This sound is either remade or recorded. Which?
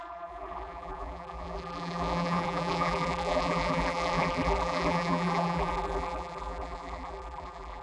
remade